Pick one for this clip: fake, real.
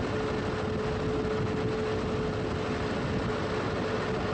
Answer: real